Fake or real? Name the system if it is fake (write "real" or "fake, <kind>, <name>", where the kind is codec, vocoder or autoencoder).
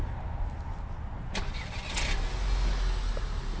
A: real